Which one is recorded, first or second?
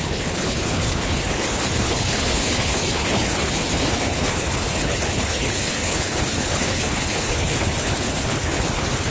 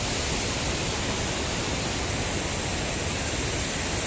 second